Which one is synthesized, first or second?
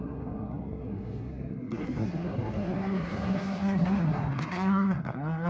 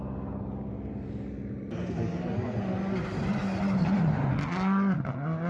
first